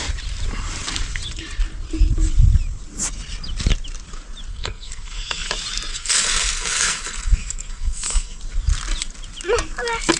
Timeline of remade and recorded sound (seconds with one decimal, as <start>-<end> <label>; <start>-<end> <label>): 0.0-4.5 recorded; 4.5-5.5 remade; 5.5-5.9 recorded; 5.9-8.4 remade; 8.4-10.2 recorded